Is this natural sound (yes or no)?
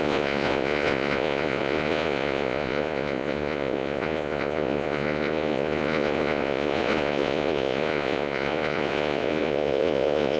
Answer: no